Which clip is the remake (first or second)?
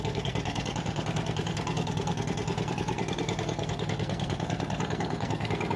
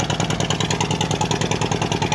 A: first